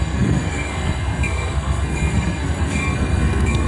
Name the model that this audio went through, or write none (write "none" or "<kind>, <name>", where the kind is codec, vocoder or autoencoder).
codec, SNAC